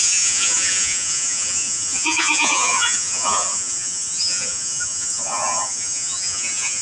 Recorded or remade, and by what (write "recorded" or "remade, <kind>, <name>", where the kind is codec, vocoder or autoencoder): remade, vocoder, Vocos